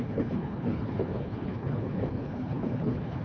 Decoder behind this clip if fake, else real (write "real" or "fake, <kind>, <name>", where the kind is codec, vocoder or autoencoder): fake, codec, HILCodec